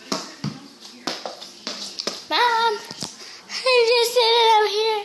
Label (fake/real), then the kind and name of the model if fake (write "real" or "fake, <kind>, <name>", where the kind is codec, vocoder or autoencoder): real